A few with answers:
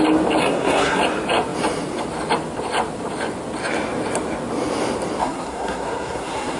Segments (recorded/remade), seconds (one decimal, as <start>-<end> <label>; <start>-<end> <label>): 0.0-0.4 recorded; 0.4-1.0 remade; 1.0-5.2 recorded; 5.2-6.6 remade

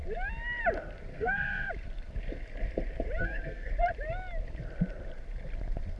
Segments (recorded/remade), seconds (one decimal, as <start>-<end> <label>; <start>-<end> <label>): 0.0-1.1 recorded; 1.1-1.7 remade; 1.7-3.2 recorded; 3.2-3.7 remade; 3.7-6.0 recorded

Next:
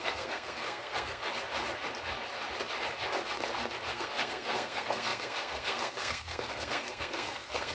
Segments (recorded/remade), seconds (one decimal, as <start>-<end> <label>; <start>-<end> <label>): 0.0-1.2 remade; 1.2-3.9 recorded; 3.9-7.7 remade